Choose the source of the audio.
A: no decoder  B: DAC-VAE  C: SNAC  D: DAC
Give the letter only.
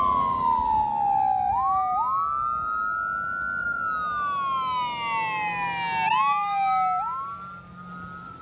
A